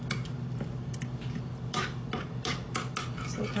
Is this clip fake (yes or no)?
no